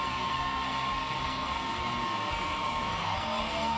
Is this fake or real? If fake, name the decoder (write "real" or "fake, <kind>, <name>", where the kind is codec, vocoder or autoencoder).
fake, codec, SNAC